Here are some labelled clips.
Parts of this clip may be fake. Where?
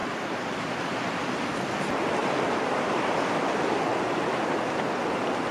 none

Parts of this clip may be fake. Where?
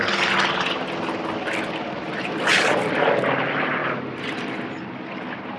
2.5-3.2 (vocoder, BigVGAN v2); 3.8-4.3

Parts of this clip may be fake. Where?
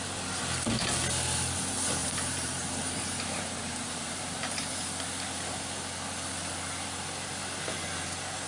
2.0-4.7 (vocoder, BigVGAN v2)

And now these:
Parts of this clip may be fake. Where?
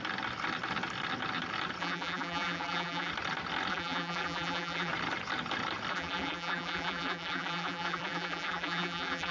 1.8-3.1 (vocoder, BigVGAN v2); 3.7-4.9; 5.9-9.3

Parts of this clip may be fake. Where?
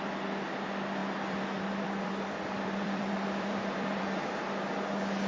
1.0-4.2 (vocoder, BigVGAN v2)